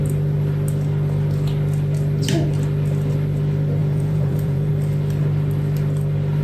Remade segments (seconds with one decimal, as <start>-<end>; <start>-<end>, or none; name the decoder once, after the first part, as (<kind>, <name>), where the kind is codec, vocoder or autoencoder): 3.8-4.7 (vocoder, Vocos)